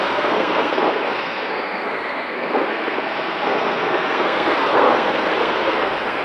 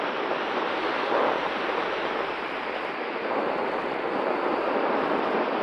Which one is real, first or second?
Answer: second